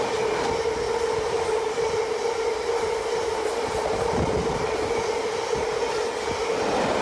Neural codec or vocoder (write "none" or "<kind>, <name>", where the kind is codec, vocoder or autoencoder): none